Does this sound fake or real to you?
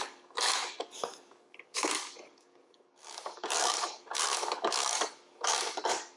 fake